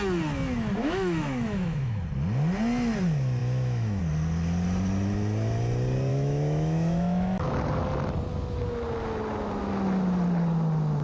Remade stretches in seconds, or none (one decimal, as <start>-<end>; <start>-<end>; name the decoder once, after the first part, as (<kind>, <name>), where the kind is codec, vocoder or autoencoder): 0.8-2.0 (autoencoder, DAC-VAE); 3.4-4.0; 6.1-7.5

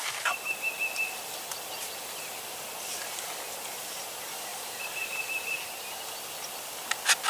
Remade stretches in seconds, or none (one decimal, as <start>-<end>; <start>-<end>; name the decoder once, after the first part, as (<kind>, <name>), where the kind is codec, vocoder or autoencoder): 4.5-6.0 (vocoder, BigVGAN v2)

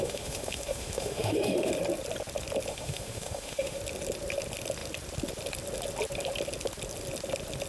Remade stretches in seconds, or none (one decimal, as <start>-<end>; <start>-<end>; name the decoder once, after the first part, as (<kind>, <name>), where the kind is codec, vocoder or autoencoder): 0.0-1.7 (autoencoder, DAC-VAE); 2.7-3.8

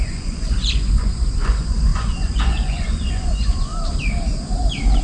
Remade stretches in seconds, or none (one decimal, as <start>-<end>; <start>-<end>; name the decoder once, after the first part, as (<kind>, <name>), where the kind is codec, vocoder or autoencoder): 0.0-3.7 (vocoder, Vocos)